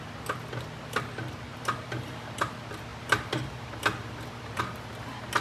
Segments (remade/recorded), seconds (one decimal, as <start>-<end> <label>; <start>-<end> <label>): 0.0-1.5 recorded; 1.5-2.5 remade; 2.5-2.9 recorded; 2.9-4.6 remade; 4.6-5.4 recorded